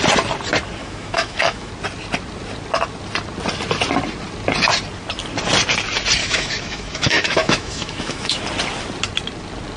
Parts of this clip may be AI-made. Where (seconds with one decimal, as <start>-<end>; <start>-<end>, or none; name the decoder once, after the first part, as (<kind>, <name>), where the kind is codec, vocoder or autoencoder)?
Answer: 0.8-1.7 (autoencoder, DAC-VAE); 6.2-8.4